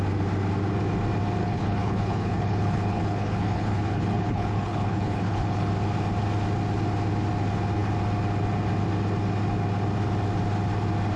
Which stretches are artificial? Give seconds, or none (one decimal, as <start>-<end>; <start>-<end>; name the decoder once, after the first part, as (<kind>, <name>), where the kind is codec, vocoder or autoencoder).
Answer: 1.4-5.7 (codec, HILCodec)

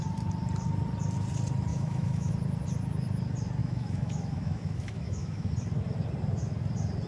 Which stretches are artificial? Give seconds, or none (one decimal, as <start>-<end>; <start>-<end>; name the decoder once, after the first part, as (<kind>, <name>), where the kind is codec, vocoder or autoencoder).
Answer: 1.7-2.3 (autoencoder, DAC-VAE); 3.6-5.5

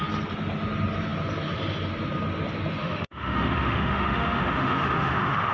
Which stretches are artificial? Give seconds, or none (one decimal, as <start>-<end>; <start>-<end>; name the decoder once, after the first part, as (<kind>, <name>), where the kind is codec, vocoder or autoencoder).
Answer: 2.8-5.5 (autoencoder, DAC-VAE)

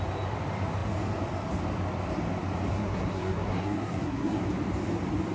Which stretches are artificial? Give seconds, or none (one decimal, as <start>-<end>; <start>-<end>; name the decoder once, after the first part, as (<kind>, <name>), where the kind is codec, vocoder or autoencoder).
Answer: 2.7-4.4 (codec, SNAC)

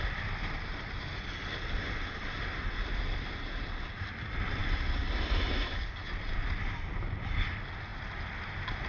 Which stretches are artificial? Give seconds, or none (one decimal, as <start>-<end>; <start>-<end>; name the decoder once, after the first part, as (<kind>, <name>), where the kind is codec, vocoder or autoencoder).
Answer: none

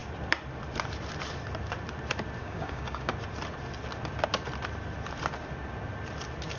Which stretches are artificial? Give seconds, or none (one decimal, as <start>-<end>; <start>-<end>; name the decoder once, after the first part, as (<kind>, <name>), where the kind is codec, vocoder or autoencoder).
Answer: 2.4-3.1 (codec, DAC)